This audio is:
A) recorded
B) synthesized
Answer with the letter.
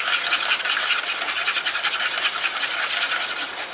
A